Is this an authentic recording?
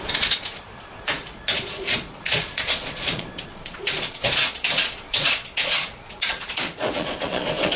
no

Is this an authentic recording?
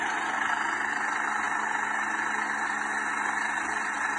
yes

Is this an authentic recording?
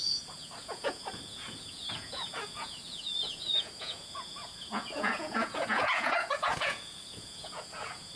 no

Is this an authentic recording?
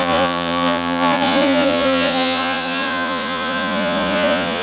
no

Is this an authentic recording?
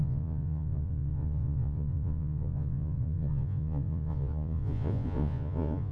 no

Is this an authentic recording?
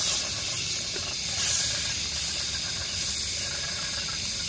yes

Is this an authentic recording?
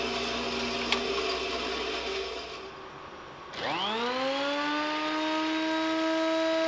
yes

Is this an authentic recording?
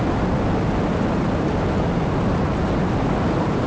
yes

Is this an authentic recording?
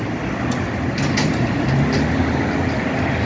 yes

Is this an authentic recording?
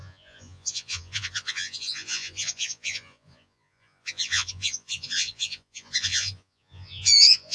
no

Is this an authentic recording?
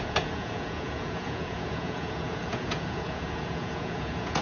no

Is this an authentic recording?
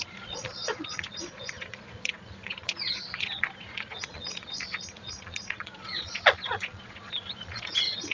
no